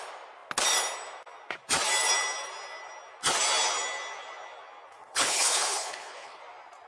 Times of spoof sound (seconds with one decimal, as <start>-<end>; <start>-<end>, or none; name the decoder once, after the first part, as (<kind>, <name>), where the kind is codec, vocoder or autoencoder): 5.0-6.4 (codec, HILCodec)